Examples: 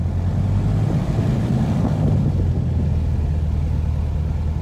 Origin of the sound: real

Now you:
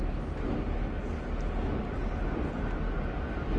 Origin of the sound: real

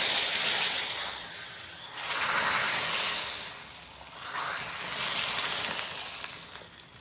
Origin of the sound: real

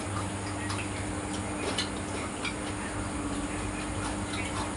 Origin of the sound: real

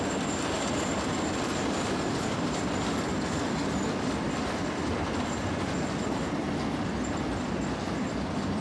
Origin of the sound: real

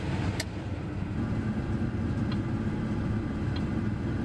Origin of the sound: real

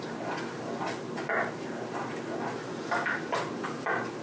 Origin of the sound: real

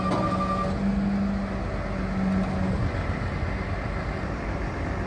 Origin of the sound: real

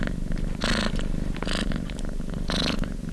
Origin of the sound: real